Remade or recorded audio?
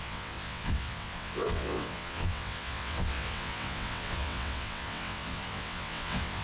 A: remade